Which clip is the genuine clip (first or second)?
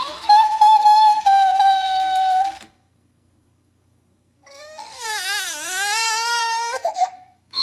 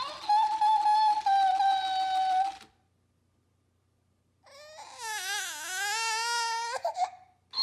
second